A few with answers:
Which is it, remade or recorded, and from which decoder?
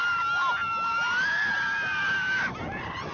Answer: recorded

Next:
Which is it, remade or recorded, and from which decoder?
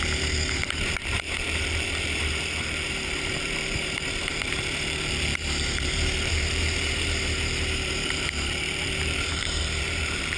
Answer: remade, vocoder, BigVGAN v2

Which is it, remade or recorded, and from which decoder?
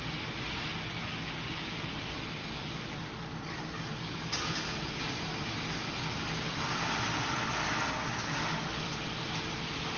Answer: recorded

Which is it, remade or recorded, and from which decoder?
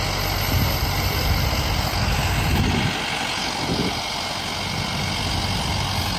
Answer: recorded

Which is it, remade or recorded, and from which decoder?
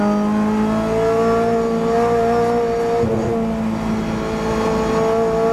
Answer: recorded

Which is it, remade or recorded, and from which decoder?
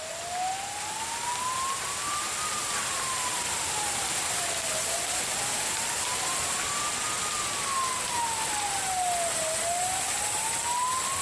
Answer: recorded